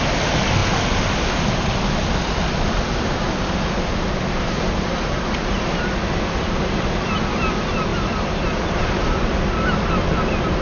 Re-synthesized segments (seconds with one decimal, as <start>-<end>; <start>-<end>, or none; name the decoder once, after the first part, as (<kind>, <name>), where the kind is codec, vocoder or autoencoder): 7.9-8.4 (vocoder, BigVGAN v2)